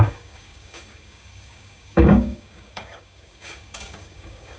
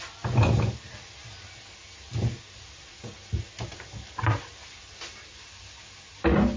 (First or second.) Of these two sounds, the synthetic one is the first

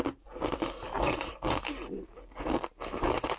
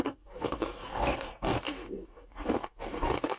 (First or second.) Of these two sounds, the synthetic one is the second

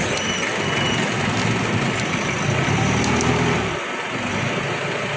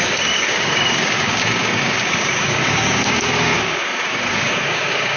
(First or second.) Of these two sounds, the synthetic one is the second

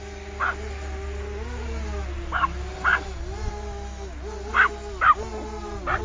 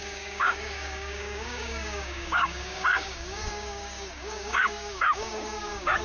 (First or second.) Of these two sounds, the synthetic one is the second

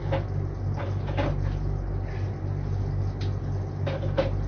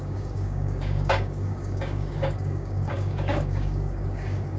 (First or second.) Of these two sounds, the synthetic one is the second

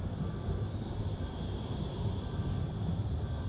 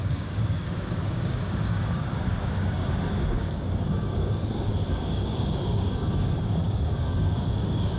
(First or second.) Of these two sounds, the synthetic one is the second